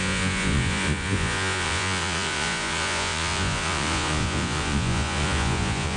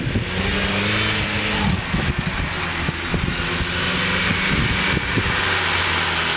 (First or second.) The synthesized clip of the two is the first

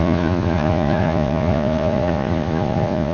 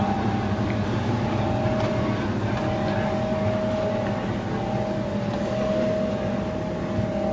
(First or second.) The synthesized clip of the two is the first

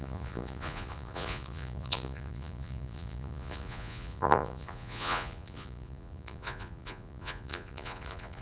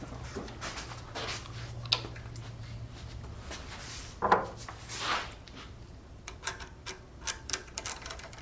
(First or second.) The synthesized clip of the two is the first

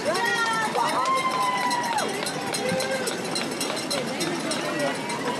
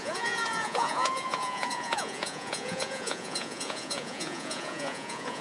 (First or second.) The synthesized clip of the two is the second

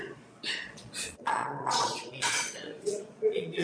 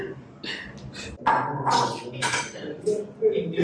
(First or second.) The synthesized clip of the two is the first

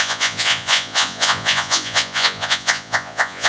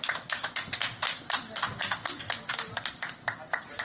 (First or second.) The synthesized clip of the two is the first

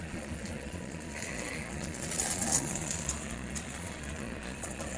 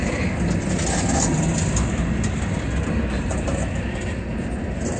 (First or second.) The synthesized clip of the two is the first